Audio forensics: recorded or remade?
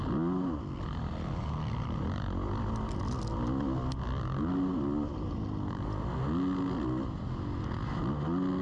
recorded